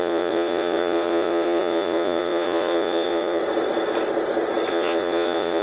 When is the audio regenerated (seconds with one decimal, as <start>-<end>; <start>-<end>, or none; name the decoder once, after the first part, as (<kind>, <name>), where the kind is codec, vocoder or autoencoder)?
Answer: 0.0-3.4 (vocoder, Vocos); 4.7-5.6